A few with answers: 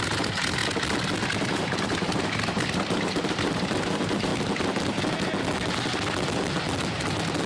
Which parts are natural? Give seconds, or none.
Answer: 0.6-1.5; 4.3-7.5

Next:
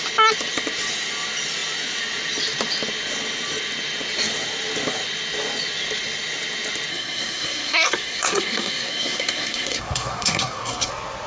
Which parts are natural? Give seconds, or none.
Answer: 0.0-6.9; 10.9-11.3

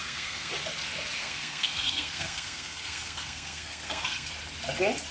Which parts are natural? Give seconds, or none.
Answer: 0.5-1.2; 4.3-5.1

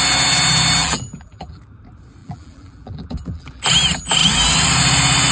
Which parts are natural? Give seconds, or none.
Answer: 0.0-0.8; 1.6-2.2; 3.6-5.3

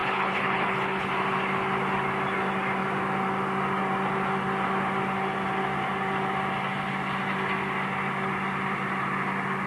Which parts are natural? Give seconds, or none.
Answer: 1.1-9.7

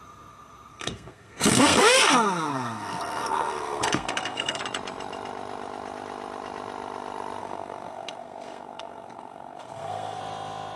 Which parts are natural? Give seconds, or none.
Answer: 0.0-0.7; 4.6-7.4; 10.2-10.8

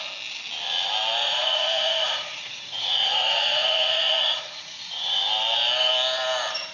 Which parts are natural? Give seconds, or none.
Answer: 0.0-1.2; 5.2-6.7